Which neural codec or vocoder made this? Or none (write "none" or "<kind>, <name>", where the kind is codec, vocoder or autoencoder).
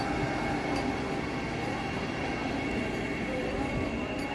none